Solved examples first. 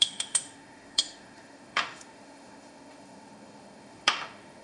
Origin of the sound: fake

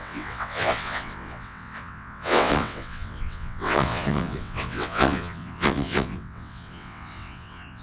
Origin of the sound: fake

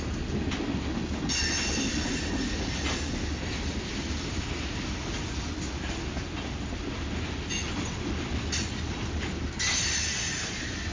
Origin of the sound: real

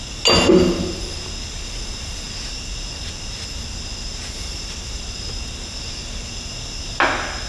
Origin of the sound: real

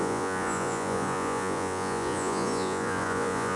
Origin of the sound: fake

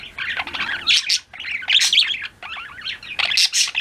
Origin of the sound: real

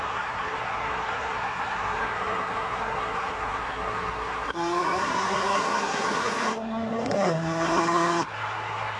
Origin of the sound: fake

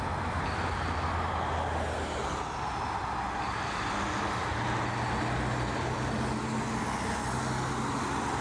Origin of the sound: real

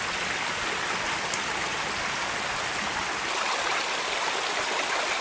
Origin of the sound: real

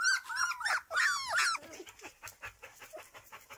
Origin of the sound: real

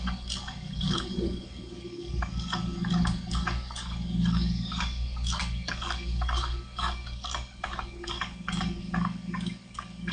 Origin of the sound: fake